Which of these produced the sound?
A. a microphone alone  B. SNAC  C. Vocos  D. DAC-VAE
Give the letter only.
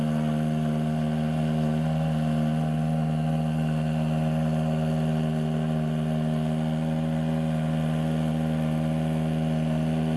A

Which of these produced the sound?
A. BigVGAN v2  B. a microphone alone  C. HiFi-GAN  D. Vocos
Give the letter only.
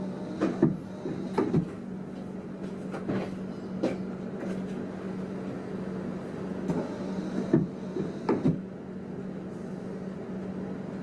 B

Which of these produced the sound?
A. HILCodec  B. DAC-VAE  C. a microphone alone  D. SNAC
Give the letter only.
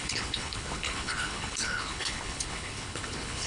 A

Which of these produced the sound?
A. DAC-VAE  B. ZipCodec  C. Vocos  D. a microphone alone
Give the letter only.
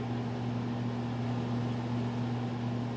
D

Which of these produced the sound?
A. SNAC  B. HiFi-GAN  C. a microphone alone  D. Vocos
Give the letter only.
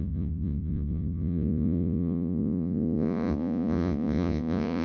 D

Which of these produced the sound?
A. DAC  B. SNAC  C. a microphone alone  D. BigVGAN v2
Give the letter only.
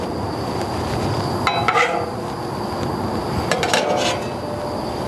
C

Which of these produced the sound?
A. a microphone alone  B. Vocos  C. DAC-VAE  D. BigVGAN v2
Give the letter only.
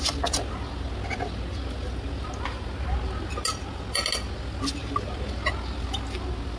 A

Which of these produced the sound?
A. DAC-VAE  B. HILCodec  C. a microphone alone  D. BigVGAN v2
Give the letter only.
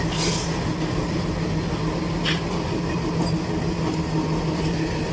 C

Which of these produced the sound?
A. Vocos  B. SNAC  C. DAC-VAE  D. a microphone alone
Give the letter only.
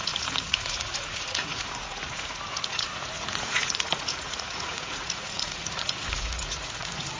A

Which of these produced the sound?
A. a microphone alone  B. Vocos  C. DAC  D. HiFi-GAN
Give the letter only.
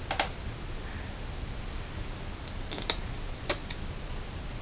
A